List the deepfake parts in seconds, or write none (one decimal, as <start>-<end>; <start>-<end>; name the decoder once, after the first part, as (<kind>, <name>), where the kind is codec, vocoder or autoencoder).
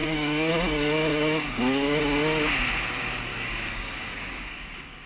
0.0-0.5 (codec, DAC); 1.1-2.0; 3.3-5.1